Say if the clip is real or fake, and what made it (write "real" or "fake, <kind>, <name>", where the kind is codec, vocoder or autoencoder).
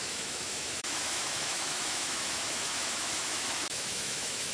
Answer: fake, autoencoder, DAC-VAE